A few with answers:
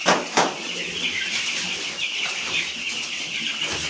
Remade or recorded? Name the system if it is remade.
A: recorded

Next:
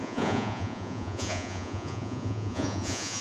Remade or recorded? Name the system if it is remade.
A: remade, vocoder, Vocos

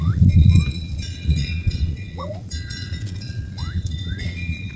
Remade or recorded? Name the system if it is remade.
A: remade, vocoder, Vocos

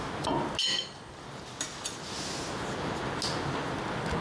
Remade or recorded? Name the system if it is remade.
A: recorded